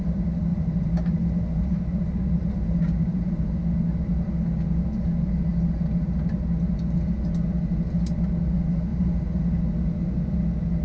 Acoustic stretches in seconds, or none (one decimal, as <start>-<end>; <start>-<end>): 0.0-0.5; 1.8-2.4; 3.6-8.9; 9.6-10.8